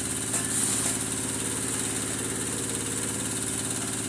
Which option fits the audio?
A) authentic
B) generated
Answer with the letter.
A